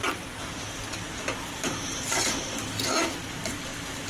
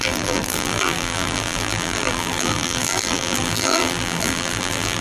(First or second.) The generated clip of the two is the second